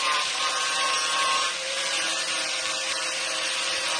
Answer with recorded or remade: remade